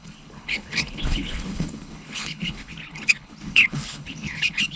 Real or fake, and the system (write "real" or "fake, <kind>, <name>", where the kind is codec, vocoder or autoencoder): fake, codec, HILCodec